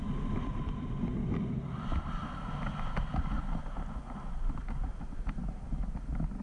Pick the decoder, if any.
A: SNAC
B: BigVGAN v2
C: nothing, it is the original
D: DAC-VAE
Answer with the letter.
C